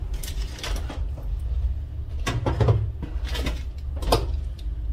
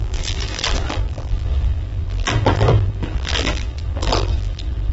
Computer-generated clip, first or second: second